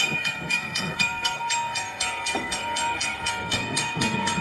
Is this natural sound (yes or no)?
no